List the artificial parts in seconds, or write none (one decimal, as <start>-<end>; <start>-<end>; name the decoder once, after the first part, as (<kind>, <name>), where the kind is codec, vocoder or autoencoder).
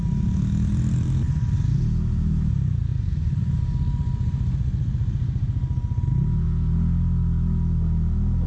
2.9-3.6 (vocoder, BigVGAN v2)